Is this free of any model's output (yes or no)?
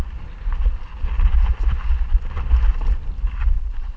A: yes